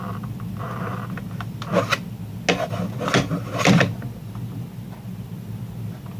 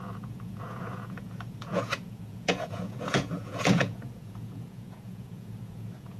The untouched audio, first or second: first